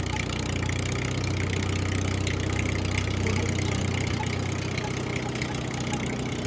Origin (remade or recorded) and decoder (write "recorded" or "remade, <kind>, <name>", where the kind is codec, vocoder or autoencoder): recorded